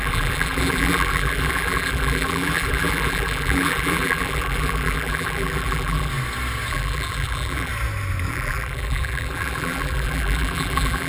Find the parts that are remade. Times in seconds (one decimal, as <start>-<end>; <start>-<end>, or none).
0.0-6.1; 6.7-7.7; 8.3-11.1

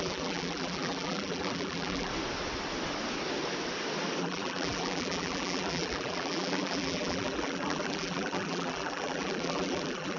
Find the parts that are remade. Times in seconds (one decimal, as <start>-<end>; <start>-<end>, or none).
0.0-2.1; 4.2-10.2

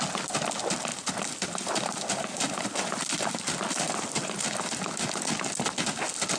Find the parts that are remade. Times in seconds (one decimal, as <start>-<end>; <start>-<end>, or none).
0.9-4.7

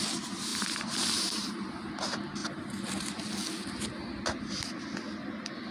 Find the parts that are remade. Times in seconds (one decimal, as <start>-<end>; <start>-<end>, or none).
0.5-1.5

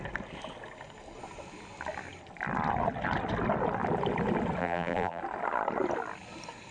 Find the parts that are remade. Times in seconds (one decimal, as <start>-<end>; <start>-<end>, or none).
4.6-5.2